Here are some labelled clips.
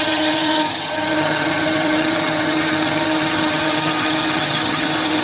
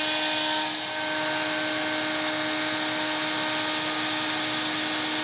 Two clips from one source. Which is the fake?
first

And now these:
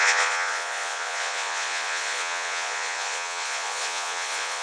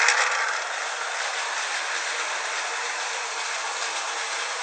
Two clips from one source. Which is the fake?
first